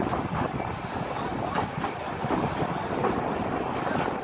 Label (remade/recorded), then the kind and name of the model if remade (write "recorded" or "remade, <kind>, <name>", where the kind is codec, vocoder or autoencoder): recorded